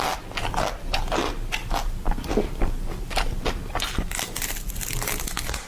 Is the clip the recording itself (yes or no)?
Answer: yes